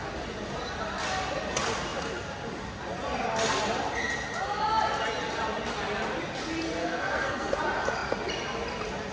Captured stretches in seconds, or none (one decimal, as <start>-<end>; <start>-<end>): 0.0-6.8; 7.6-9.1